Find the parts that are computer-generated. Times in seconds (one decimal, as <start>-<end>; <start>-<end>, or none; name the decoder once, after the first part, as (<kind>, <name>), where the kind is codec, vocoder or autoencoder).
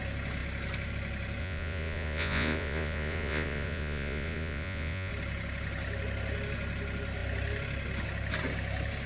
1.4-5.1 (vocoder, Vocos)